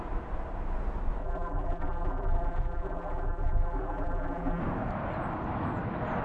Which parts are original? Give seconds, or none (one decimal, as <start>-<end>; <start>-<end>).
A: 0.0-1.2; 4.6-6.2